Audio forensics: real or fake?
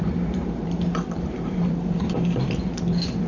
fake